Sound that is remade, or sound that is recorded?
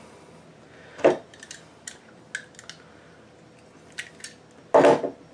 recorded